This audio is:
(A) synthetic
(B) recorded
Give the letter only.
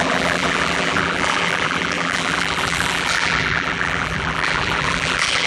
A